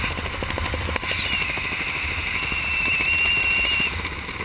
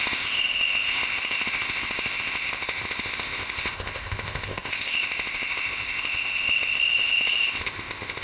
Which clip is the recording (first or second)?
first